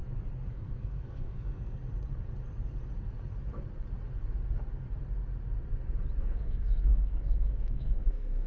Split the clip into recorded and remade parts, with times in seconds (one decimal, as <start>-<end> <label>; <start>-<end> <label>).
0.0-0.5 recorded; 0.5-1.8 remade; 1.8-6.2 recorded; 6.2-8.5 remade